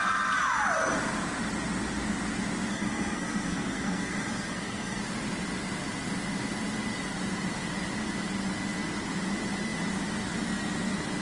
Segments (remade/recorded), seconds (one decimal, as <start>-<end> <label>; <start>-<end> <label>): 0.0-2.7 recorded; 2.7-5.0 remade; 5.0-11.2 recorded